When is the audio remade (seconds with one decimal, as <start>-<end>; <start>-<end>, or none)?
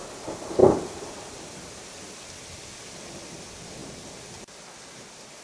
0.6-2.3